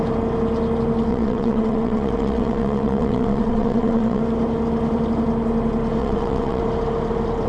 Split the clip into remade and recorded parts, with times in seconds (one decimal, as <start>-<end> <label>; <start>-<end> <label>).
0.0-1.1 recorded; 1.1-4.2 remade; 4.2-6.0 recorded; 6.0-6.6 remade; 6.6-7.5 recorded